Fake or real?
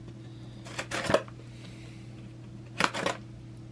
real